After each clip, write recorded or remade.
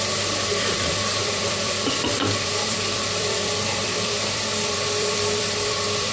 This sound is remade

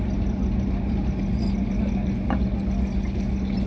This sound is recorded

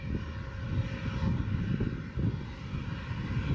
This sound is recorded